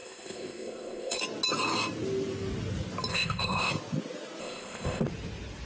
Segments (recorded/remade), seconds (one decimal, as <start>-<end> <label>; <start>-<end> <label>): 0.0-1.2 remade; 1.2-3.1 recorded; 3.1-3.7 remade; 3.7-4.4 recorded; 4.4-5.0 remade; 5.0-5.7 recorded